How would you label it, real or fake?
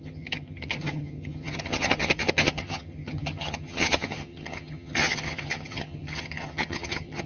fake